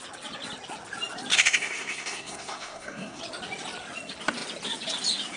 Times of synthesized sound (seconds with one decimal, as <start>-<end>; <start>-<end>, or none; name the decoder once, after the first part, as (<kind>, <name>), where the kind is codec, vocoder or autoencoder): 1.3-3.2 (codec, SNAC)